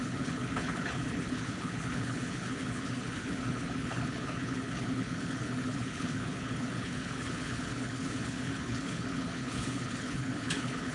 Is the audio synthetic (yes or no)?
yes